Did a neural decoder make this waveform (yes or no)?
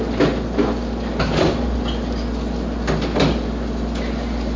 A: no